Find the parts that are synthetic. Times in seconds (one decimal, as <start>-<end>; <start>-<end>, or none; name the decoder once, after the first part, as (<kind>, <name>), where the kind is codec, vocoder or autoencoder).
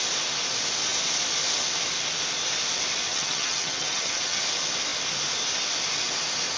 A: 3.1-4.4 (vocoder, HiFi-GAN)